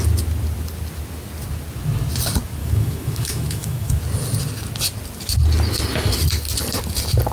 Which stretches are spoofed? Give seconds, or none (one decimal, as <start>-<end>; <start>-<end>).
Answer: 2.6-4.0